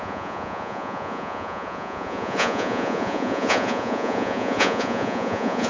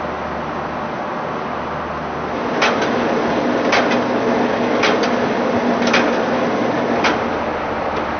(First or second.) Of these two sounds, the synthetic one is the first